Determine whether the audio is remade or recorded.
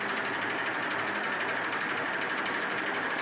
remade